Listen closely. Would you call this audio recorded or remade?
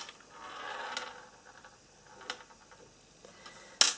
recorded